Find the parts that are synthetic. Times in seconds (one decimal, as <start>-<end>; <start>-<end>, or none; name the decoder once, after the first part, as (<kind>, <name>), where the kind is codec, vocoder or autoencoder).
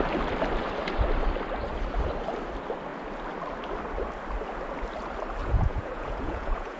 5.4-6.8 (vocoder, Vocos)